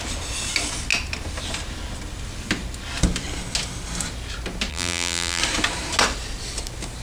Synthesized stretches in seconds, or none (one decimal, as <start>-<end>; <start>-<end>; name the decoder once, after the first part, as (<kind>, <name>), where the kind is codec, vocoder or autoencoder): 4.7-5.4 (vocoder, BigVGAN v2)